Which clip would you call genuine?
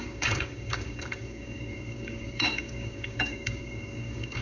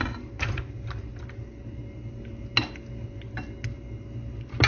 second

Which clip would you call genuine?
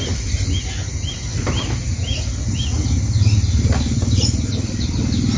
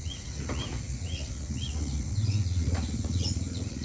first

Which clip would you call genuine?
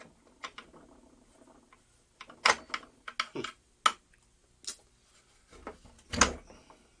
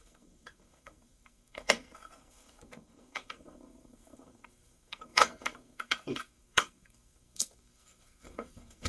first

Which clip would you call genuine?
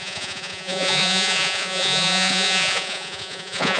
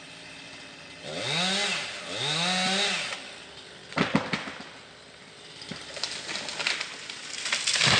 second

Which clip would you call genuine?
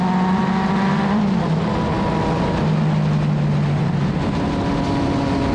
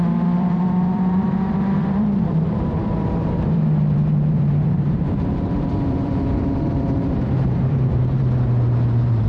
first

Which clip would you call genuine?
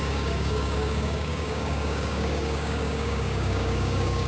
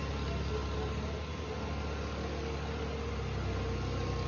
second